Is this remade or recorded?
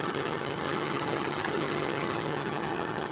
remade